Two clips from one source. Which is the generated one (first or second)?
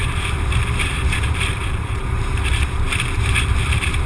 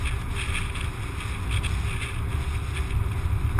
first